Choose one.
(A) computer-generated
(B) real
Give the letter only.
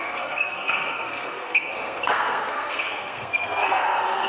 A